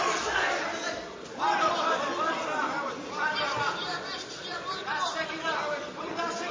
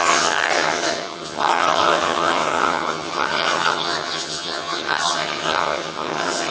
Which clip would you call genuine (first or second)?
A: first